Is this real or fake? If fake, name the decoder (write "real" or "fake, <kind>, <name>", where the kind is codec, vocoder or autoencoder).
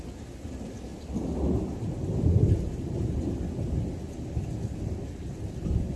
real